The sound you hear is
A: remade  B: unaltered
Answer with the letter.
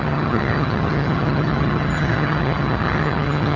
A